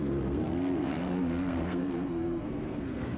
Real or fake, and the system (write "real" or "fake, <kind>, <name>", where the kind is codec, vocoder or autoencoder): fake, codec, SNAC